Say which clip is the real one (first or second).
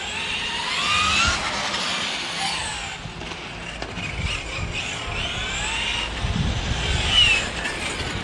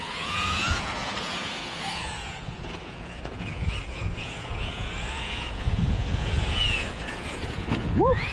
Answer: first